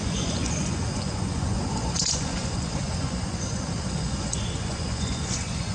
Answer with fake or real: fake